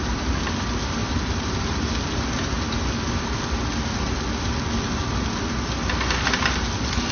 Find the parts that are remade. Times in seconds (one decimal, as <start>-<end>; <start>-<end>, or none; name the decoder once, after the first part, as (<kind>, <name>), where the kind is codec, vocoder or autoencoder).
none